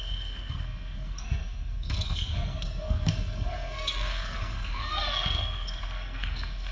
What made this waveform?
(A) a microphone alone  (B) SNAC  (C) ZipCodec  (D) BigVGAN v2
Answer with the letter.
B